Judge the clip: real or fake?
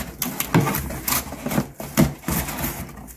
real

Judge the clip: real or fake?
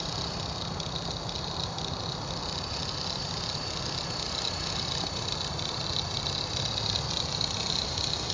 real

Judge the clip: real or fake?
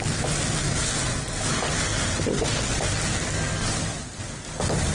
real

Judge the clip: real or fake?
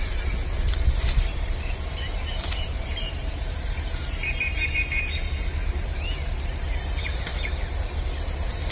fake